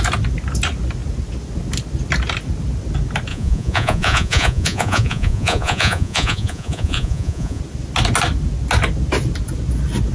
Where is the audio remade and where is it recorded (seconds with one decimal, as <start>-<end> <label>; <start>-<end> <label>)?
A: 0.0-3.3 recorded; 3.3-7.6 remade; 7.6-10.1 recorded